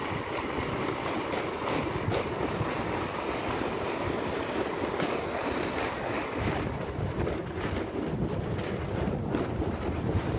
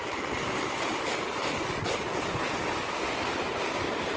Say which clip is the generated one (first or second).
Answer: first